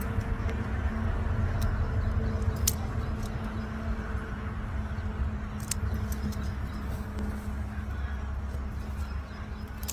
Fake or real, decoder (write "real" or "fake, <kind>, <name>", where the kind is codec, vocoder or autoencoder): real